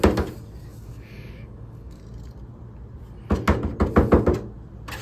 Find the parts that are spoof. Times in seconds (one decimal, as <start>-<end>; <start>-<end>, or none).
0.7-2.0